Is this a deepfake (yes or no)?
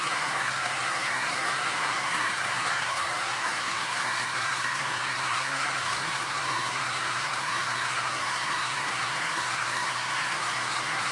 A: yes